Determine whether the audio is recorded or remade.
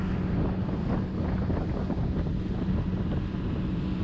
recorded